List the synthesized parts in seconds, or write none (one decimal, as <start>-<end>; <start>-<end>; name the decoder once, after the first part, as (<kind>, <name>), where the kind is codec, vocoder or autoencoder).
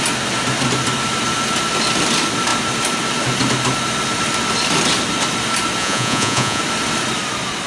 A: 5.8-6.6 (vocoder, Vocos)